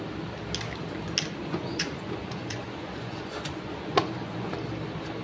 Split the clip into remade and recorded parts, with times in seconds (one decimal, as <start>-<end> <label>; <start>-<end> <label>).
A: 0.0-1.4 recorded; 1.4-4.5 remade; 4.5-5.2 recorded